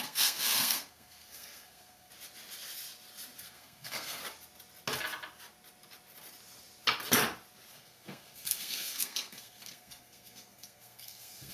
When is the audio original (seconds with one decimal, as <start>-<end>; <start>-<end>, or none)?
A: 2.1-3.4; 4.2-7.7